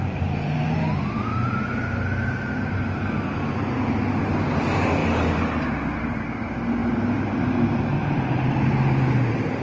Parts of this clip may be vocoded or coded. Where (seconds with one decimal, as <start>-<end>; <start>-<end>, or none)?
none